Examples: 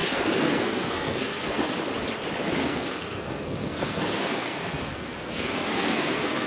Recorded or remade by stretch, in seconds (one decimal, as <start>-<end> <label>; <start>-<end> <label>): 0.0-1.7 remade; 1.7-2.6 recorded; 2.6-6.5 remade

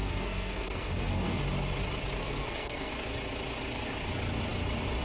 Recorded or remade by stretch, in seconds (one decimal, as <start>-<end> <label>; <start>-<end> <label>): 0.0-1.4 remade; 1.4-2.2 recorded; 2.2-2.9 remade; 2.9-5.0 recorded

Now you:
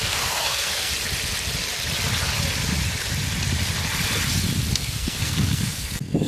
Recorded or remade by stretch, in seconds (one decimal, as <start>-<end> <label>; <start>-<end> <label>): 0.0-0.9 remade; 0.9-4.7 recorded; 4.7-6.3 remade